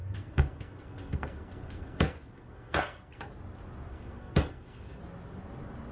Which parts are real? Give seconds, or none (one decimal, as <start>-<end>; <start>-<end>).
3.3-3.9; 5.0-5.9